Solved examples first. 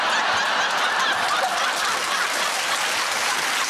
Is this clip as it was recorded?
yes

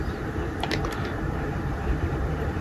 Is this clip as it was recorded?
no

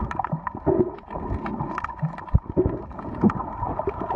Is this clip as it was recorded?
yes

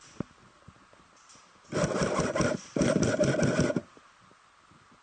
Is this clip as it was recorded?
no